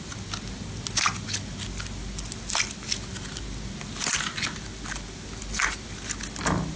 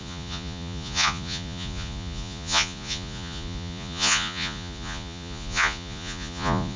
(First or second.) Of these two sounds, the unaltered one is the first